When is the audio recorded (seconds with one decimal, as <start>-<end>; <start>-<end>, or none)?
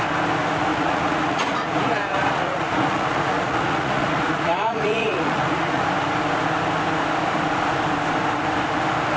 0.0-0.7; 5.8-9.2